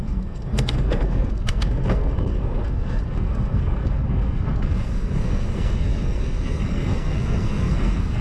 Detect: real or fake fake